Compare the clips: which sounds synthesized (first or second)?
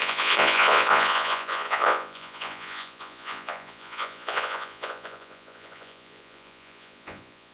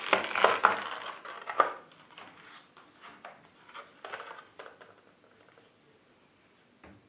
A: first